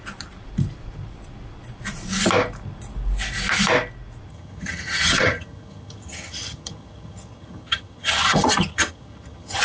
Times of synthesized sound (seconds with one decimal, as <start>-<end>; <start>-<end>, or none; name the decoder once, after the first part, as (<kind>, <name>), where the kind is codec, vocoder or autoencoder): 4.3-9.6 (vocoder, HiFi-GAN)